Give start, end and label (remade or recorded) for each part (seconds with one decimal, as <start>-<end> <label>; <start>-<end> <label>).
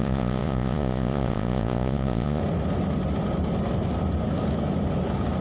0.0-2.4 remade; 2.4-5.4 recorded